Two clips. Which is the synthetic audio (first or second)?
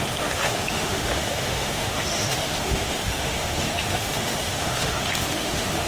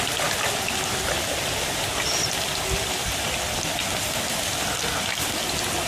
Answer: first